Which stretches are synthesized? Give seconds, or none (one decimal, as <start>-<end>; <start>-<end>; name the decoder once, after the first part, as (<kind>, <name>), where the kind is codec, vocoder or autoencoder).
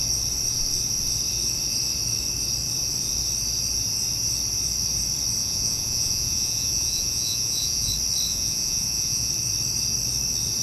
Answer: 5.4-7.9 (vocoder, Vocos); 8.3-9.3